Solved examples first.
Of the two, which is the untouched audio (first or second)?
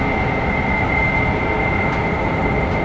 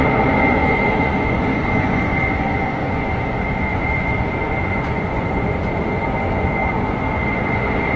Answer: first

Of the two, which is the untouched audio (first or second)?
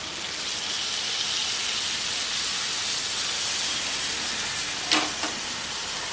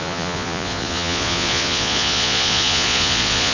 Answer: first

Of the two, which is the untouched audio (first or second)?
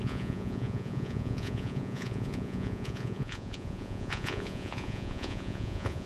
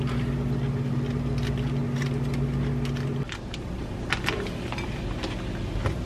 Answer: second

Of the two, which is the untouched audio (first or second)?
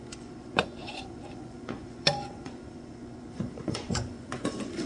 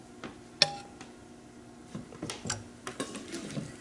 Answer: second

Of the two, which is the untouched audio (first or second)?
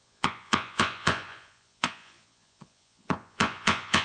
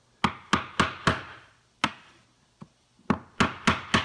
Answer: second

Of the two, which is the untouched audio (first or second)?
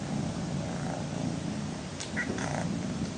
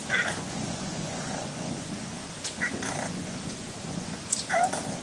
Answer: first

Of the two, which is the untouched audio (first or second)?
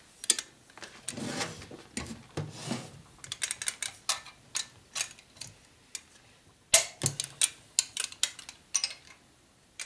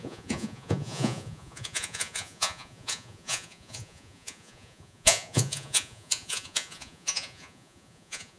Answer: first